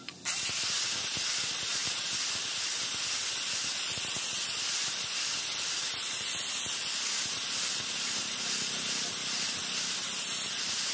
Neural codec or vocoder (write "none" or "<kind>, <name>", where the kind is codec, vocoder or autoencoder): none